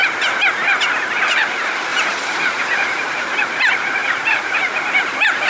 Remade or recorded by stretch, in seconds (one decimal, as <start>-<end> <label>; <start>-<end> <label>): 0.0-1.2 recorded; 1.2-1.9 remade; 1.9-2.6 recorded; 2.6-5.5 remade